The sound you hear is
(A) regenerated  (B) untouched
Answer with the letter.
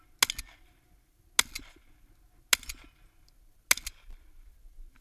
B